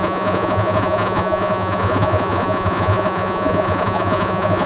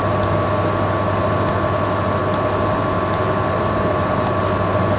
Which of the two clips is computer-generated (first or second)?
first